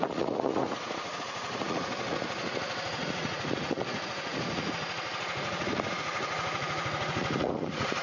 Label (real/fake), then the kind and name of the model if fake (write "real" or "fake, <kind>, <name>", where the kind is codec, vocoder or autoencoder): fake, vocoder, Vocos